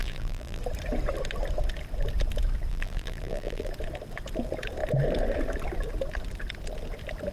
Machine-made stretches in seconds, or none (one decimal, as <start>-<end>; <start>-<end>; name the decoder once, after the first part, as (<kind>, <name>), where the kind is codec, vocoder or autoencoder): 0.0-0.6 (vocoder, BigVGAN v2); 2.7-3.7